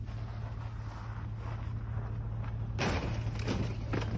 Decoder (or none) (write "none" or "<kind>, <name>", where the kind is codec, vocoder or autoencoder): none